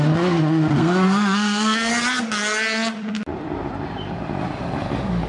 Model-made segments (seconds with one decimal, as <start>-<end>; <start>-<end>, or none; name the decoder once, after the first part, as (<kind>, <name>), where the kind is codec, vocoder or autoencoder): 0.8-1.9 (codec, SNAC)